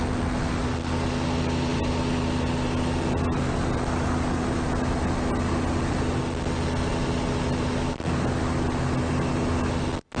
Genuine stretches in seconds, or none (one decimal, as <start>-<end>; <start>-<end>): 0.0-10.2